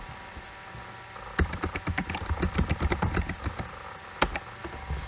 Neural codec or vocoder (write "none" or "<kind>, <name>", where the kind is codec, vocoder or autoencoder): none